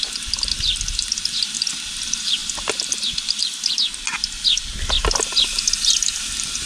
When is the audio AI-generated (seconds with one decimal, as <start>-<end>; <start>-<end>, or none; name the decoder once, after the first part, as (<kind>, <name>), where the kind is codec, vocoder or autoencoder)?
0.0-6.7 (vocoder, BigVGAN v2)